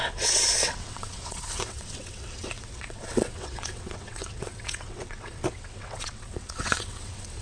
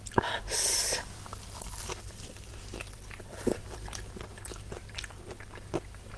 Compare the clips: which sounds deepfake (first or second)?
first